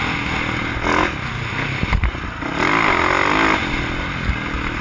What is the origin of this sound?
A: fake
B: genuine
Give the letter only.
B